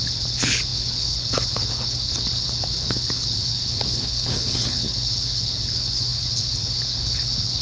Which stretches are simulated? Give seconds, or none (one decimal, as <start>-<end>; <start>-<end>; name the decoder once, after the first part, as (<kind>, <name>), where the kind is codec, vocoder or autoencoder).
0.0-7.6 (codec, HILCodec)

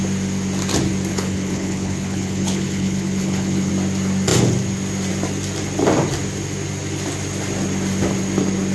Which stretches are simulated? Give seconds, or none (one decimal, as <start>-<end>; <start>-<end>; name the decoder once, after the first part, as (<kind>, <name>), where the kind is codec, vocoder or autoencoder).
1.1-3.7 (codec, HILCodec)

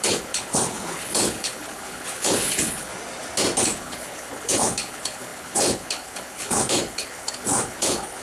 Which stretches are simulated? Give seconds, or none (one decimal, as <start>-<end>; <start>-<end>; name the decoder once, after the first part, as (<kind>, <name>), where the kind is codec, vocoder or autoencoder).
0.0-2.9 (codec, HILCodec); 3.6-8.2

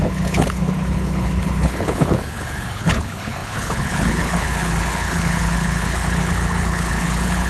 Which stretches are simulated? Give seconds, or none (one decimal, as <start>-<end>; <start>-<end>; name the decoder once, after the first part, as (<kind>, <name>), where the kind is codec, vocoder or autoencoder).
0.0-7.5 (codec, HILCodec)

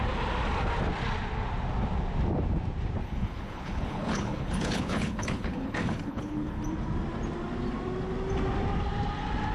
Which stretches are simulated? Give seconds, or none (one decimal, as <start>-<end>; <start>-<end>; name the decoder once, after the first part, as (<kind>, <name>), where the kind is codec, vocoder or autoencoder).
3.0-6.6 (codec, HILCodec)

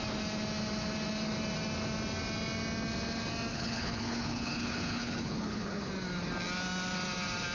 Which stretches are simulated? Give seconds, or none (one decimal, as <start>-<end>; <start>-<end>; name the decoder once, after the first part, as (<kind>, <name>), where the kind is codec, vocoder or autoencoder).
3.5-5.9 (codec, HILCodec)